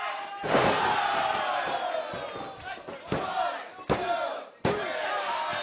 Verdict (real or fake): real